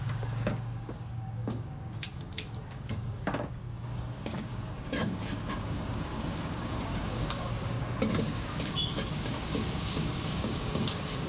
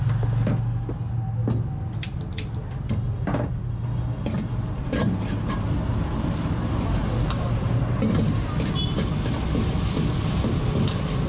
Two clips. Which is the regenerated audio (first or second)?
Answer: first